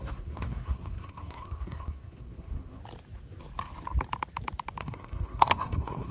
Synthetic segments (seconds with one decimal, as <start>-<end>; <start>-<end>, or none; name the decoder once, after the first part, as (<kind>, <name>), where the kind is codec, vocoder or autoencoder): 0.0-2.8 (codec, SNAC); 4.8-6.1